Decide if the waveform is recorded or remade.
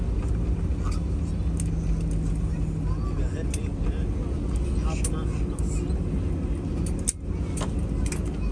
recorded